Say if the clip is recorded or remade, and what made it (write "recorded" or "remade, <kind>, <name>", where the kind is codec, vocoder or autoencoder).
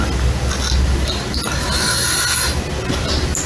recorded